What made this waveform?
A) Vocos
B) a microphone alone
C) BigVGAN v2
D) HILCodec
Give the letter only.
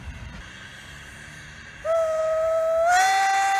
B